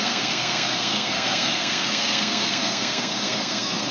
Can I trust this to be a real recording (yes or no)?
no